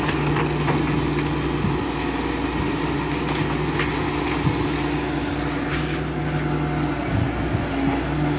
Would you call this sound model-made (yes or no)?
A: no